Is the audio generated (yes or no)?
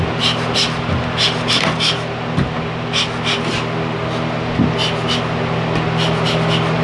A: no